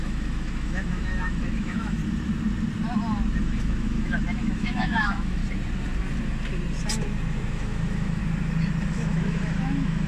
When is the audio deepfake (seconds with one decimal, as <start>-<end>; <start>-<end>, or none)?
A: 0.0-2.0; 3.4-5.4; 7.5-8.2; 8.9-10.1